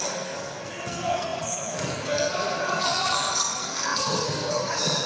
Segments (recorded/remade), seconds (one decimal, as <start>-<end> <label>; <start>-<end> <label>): 0.0-5.1 remade